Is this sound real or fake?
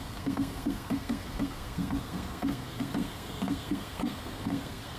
fake